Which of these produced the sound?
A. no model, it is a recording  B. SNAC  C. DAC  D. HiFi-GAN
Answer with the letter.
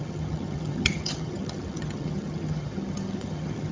D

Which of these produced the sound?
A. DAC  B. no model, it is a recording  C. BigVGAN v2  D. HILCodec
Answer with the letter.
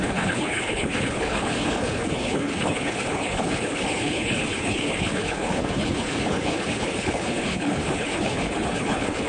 D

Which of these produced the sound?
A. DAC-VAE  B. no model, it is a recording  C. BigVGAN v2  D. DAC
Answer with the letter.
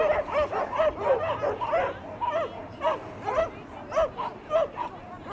B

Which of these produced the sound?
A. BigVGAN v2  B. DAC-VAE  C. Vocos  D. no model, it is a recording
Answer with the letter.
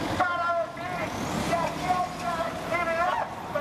D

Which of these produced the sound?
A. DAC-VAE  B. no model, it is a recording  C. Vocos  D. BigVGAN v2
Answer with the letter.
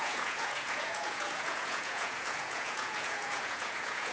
C